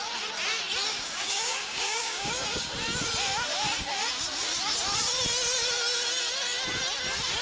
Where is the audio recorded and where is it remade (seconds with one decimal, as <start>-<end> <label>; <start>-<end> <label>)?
0.0-0.9 recorded; 0.9-2.7 remade; 2.7-7.4 recorded